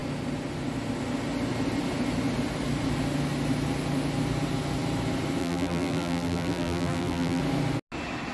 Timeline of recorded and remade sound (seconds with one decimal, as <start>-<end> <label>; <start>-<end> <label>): 0.0-5.4 recorded; 5.4-7.4 remade; 7.4-8.3 recorded